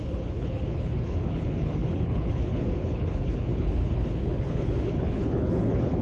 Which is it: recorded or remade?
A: remade